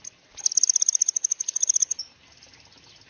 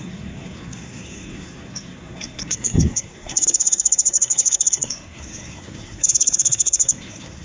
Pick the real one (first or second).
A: first